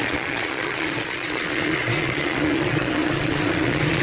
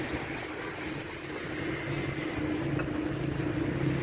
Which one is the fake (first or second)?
first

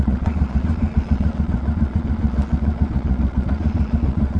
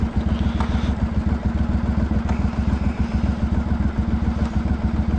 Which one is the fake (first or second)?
first